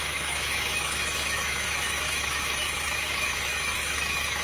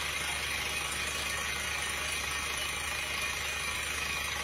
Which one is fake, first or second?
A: first